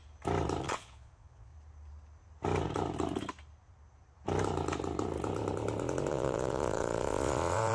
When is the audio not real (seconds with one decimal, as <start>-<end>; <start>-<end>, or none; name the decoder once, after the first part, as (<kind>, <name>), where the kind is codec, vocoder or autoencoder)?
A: 0.6-1.5 (vocoder, Vocos); 6.1-7.7

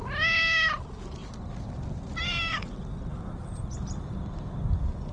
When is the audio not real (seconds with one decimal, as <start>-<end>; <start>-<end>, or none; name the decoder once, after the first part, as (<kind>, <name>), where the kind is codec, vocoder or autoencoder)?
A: none

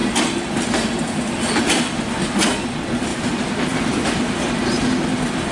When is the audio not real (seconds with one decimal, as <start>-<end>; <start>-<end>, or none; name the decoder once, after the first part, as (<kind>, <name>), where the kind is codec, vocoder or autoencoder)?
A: 3.1-4.4 (vocoder, BigVGAN v2)

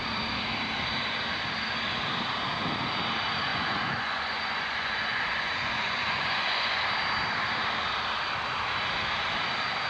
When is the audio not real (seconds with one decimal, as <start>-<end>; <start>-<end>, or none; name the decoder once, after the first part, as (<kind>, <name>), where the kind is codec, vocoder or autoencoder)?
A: 3.5-6.8 (vocoder, Vocos)

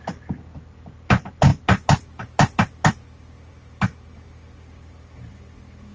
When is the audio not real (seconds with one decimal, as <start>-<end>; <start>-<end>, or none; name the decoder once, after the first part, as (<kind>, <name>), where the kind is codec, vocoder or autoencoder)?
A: none

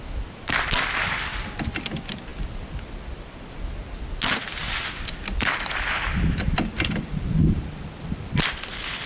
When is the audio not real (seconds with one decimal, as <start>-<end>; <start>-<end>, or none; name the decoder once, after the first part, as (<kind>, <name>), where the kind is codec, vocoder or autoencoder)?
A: none